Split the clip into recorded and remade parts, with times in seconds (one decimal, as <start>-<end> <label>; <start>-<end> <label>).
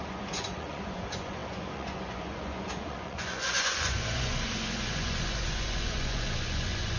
0.0-7.0 remade